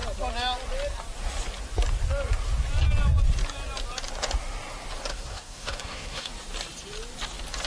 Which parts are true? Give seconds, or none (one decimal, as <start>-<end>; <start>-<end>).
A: 0.0-5.1; 6.3-7.7